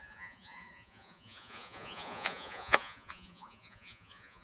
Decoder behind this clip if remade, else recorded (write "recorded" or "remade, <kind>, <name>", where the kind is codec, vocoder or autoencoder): remade, vocoder, Vocos